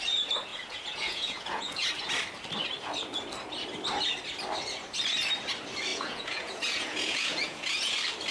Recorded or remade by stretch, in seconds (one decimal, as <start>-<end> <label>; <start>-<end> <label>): 0.0-0.5 recorded; 0.5-1.9 remade; 1.9-5.9 recorded; 5.9-7.9 remade; 7.9-8.3 recorded